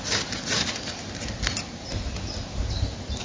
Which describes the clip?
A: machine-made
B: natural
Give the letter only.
B